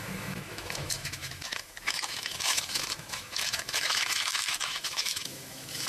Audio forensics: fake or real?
fake